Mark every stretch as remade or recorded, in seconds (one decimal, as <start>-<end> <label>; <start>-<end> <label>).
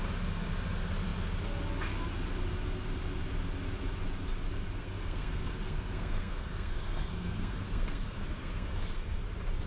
0.0-4.8 recorded; 4.8-9.2 remade; 9.2-9.7 recorded